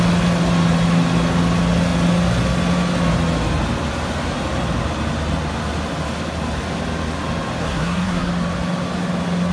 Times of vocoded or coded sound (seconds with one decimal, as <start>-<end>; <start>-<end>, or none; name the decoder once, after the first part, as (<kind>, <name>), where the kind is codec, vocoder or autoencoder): 7.6-8.3 (codec, SNAC)